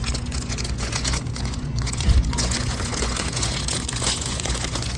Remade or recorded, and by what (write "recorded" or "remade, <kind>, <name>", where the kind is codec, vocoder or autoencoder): remade, vocoder, Vocos